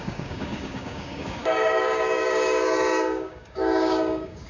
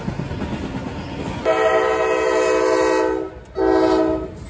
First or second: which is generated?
first